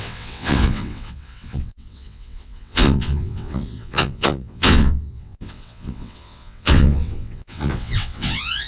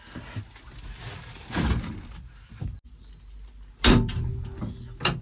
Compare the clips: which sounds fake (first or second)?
first